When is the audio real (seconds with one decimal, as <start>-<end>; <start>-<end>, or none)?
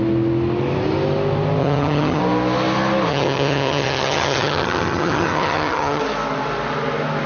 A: 0.0-1.6; 2.2-3.1; 6.0-7.3